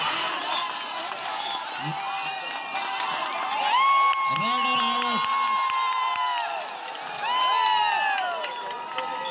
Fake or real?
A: real